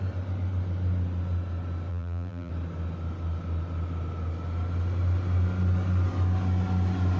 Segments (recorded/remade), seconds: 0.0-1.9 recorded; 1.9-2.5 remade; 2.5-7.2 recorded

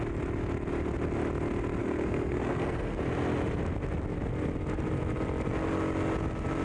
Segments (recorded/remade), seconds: 0.0-1.8 recorded; 1.8-3.0 remade; 3.0-6.6 recorded

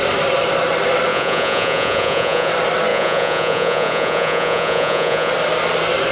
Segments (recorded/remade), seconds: 0.0-1.1 recorded; 1.1-2.5 remade; 2.5-2.9 recorded; 2.9-5.3 remade; 5.3-6.1 recorded

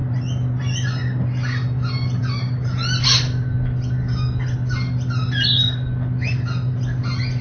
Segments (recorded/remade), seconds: 0.0-7.4 recorded